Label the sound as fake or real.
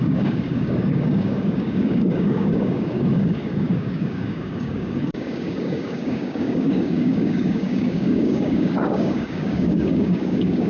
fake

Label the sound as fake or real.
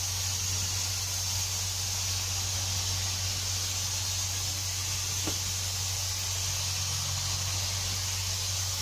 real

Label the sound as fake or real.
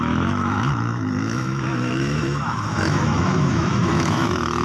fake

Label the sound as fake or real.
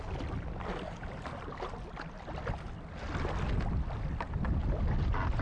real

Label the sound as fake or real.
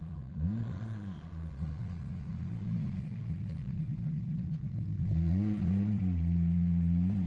fake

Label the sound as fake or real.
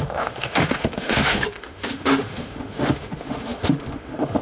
fake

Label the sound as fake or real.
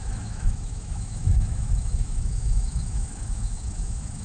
fake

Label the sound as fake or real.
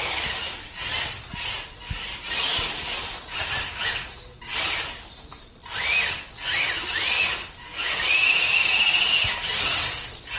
real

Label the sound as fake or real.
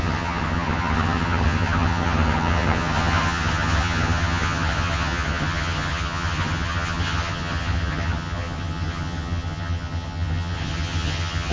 fake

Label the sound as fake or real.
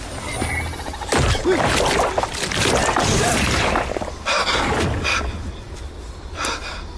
real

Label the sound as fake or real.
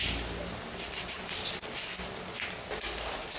real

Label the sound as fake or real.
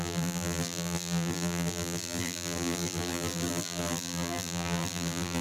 fake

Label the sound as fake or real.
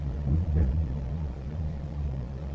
fake